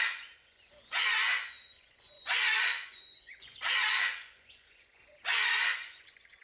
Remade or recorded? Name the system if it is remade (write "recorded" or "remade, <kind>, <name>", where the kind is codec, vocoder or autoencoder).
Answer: remade, vocoder, Vocos